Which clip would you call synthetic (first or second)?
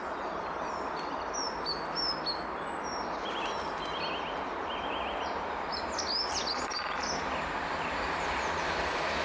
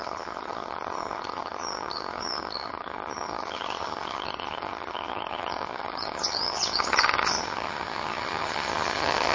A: second